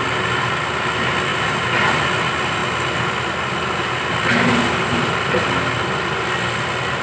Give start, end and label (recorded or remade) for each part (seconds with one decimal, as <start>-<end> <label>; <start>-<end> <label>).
0.0-1.3 recorded; 1.3-1.9 remade; 1.9-7.0 recorded